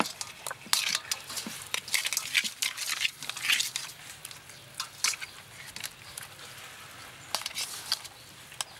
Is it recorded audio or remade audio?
recorded